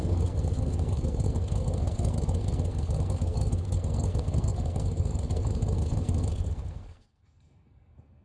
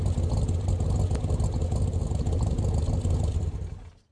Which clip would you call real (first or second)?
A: second